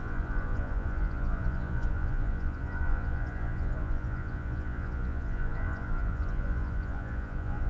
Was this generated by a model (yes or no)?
yes